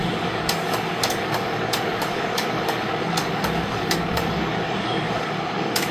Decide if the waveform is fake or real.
fake